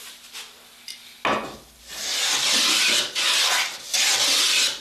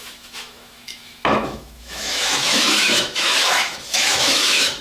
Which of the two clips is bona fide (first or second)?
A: first